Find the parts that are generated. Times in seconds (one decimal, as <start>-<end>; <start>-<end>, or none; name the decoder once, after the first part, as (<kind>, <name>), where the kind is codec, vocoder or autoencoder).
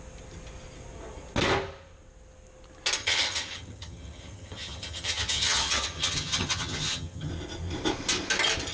3.0-7.3 (vocoder, HiFi-GAN)